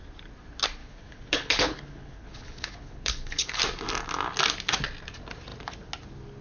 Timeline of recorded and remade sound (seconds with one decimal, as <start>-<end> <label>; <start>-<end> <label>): 0.0-0.8 recorded; 0.8-3.6 remade; 3.6-6.4 recorded